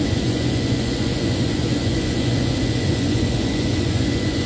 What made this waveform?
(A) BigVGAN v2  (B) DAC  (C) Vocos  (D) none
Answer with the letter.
C